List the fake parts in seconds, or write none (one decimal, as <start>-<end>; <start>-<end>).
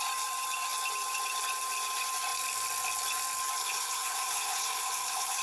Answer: 3.6-5.4